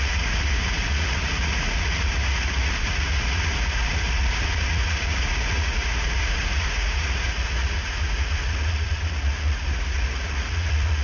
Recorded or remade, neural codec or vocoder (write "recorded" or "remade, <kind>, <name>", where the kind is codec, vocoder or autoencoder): remade, vocoder, Vocos